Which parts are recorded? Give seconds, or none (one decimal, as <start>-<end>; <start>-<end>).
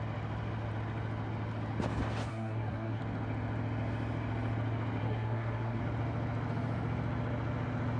0.0-2.3; 3.0-5.0; 5.8-8.0